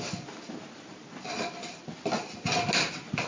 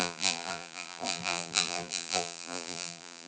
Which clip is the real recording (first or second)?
first